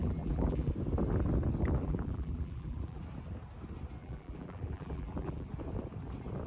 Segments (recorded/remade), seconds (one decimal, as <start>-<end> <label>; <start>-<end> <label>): 0.0-0.7 remade; 0.7-1.8 recorded; 1.8-3.0 remade; 3.0-4.0 recorded; 4.0-5.5 remade; 5.5-6.5 recorded